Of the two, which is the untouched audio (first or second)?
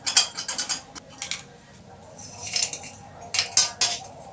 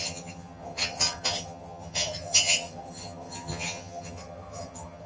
first